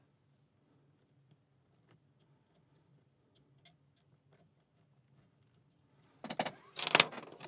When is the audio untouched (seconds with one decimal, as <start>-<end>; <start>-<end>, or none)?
0.0-7.5